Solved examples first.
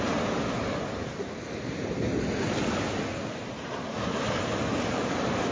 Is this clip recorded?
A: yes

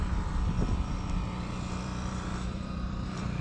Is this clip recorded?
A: no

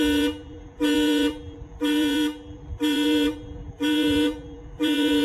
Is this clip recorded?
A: no